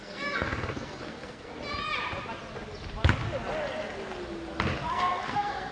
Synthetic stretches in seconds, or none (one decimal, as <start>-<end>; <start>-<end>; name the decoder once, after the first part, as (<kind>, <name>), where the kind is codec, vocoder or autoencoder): 0.0-1.5 (codec, SNAC); 4.9-5.7